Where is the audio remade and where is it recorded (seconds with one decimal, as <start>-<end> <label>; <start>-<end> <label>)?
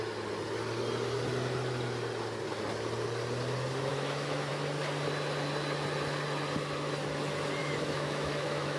0.0-3.9 recorded; 3.9-4.5 remade; 4.5-7.6 recorded; 7.6-8.8 remade